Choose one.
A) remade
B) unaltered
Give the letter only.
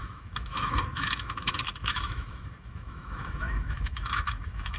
A